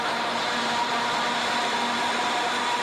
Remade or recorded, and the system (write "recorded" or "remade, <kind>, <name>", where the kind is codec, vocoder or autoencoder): recorded